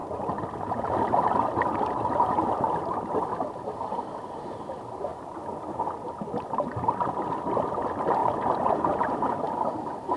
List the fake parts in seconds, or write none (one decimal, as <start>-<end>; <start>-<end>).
8.2-9.3